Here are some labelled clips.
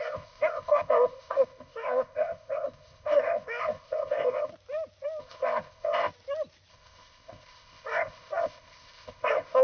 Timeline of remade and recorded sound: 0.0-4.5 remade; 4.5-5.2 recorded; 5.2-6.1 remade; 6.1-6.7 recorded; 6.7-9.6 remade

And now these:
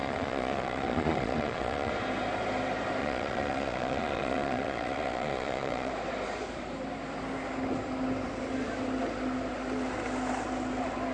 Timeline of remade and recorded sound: 0.0-1.9 remade; 1.9-3.0 recorded; 3.0-5.9 remade; 5.9-11.1 recorded

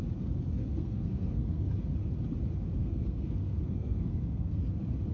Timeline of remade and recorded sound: 0.0-0.6 recorded; 0.6-1.7 remade; 1.7-2.8 recorded; 2.8-4.6 remade; 4.6-5.1 recorded

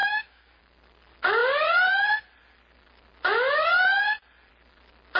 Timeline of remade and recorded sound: 0.0-0.6 remade; 0.6-5.2 recorded

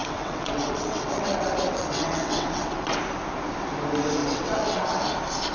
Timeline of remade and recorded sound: 0.0-3.0 remade; 3.0-4.2 recorded; 4.2-5.0 remade; 5.0-5.5 recorded

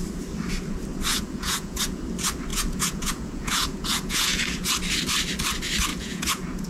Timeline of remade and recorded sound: 0.0-1.1 recorded; 1.1-2.0 remade; 2.0-2.5 recorded; 2.5-4.7 remade; 4.7-5.9 recorded; 5.9-6.7 remade